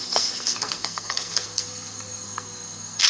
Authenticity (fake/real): fake